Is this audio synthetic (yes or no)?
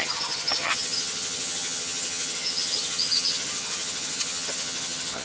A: yes